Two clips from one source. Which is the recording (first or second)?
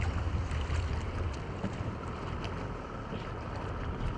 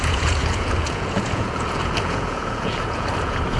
first